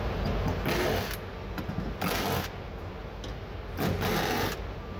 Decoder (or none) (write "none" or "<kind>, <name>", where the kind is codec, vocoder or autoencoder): none